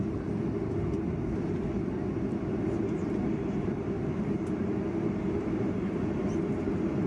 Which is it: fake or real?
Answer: real